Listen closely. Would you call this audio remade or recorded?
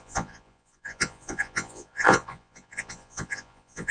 remade